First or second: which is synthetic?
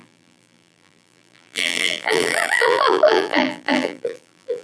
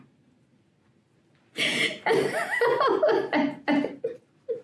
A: first